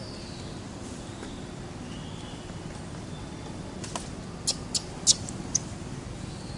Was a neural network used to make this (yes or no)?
no